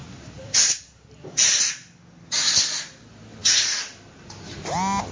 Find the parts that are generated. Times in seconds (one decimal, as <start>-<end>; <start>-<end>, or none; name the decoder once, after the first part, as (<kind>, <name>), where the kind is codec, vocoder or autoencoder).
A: none